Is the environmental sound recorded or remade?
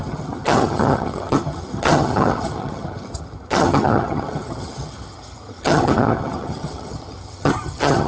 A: remade